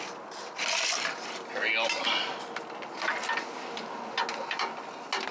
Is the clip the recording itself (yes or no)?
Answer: yes